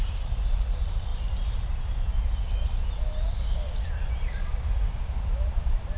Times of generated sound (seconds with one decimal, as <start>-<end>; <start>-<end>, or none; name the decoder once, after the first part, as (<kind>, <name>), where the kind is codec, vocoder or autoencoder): 0.0-1.1 (vocoder, BigVGAN v2); 4.7-6.0